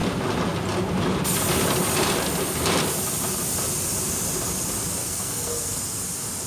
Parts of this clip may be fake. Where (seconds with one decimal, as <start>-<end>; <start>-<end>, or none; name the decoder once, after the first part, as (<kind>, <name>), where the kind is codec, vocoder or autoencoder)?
5.0-5.8 (codec, SNAC)